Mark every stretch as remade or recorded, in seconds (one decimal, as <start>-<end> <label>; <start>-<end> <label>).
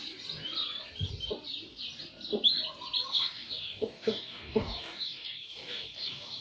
0.0-3.1 recorded; 3.1-6.4 remade